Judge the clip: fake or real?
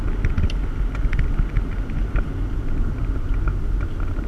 real